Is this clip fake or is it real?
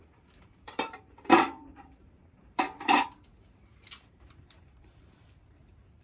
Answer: fake